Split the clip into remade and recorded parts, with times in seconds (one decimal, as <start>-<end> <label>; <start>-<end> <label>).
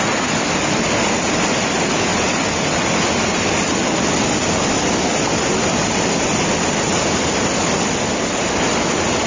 0.0-9.3 recorded